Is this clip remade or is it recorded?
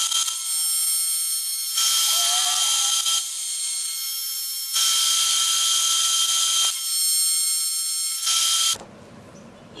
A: recorded